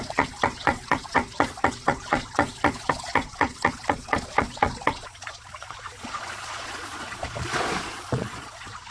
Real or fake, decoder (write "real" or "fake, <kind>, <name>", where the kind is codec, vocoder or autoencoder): fake, vocoder, Vocos